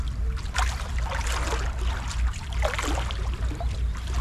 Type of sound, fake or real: real